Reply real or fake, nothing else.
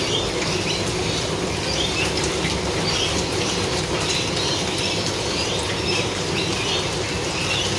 real